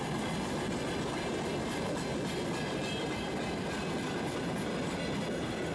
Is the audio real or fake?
real